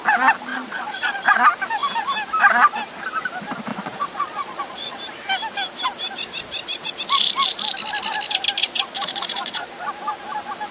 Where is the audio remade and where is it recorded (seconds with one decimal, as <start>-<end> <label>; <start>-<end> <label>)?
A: 0.0-0.5 recorded; 0.5-1.4 remade; 1.4-3.7 recorded; 3.7-5.0 remade; 5.0-8.6 recorded; 8.6-9.7 remade; 9.7-10.7 recorded